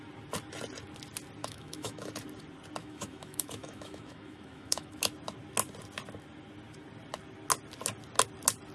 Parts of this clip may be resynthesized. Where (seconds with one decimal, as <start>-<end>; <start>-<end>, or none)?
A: 1.4-2.1; 2.8-5.1